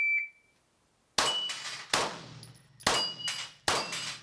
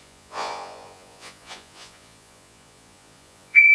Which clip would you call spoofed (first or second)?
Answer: second